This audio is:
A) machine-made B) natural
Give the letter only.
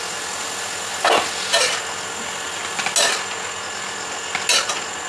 B